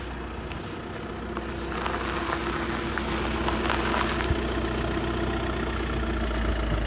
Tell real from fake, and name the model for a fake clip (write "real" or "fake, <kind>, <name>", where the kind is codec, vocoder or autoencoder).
real